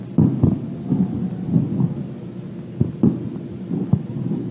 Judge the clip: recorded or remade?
recorded